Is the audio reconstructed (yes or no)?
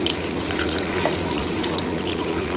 yes